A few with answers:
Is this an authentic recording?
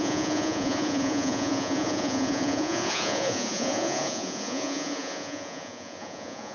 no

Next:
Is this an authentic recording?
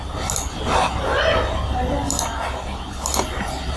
yes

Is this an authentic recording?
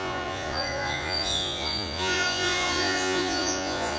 no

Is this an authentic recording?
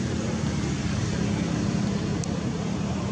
yes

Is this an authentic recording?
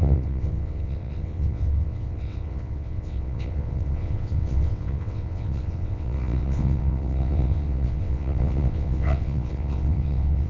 no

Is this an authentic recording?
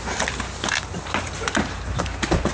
yes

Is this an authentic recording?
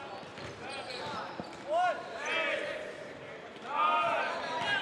yes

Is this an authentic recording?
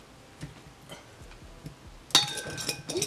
yes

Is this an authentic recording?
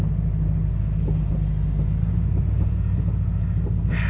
yes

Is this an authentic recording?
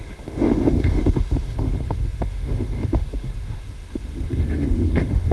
no